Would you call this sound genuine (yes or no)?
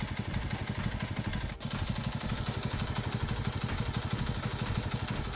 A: yes